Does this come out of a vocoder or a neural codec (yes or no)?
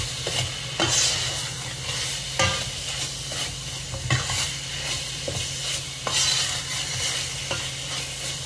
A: no